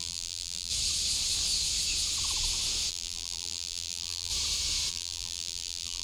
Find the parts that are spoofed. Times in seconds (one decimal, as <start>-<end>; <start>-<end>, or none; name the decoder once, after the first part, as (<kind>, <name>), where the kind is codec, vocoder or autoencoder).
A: 0.0-0.7 (vocoder, BigVGAN v2); 2.9-4.3; 4.9-6.0